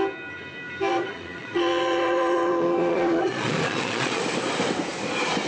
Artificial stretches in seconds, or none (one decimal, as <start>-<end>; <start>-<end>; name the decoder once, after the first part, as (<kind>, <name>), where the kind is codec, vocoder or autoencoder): 0.9-4.2 (vocoder, Vocos)